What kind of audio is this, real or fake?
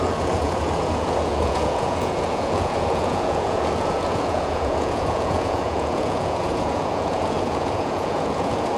fake